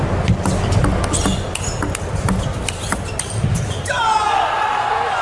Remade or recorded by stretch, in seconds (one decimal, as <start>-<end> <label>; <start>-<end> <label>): 0.0-5.2 recorded